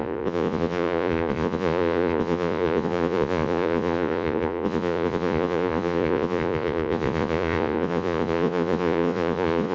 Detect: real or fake fake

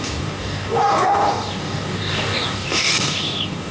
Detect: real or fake fake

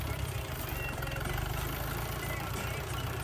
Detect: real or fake fake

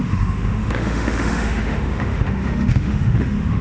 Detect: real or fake fake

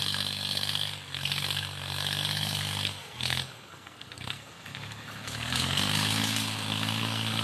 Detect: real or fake fake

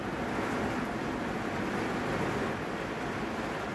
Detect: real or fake real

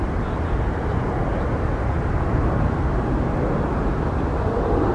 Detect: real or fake real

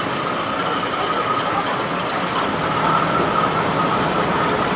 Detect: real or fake real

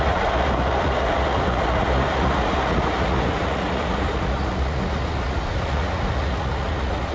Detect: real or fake fake